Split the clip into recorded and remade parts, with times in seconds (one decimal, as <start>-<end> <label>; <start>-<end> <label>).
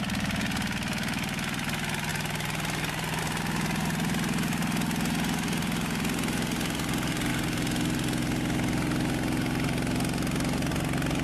0.0-11.2 recorded